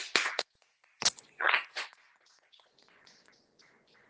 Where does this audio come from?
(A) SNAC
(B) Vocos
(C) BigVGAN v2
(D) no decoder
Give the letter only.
B